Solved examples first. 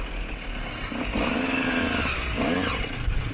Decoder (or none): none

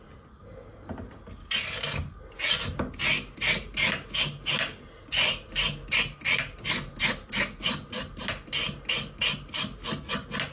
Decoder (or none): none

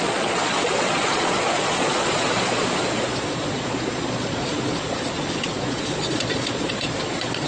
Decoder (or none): vocoder, Vocos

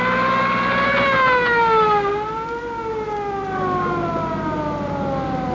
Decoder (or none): none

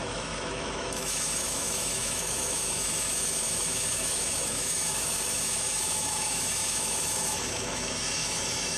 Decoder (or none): autoencoder, DAC-VAE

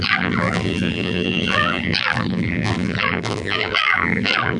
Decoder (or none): vocoder, BigVGAN v2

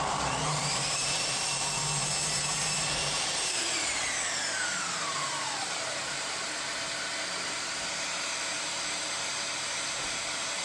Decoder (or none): vocoder, BigVGAN v2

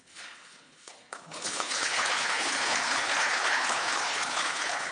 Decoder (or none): codec, HILCodec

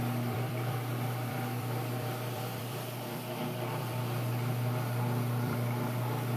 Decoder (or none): vocoder, BigVGAN v2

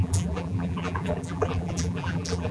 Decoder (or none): vocoder, BigVGAN v2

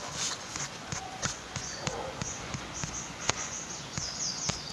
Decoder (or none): vocoder, Vocos